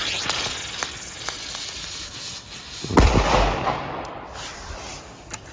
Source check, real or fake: real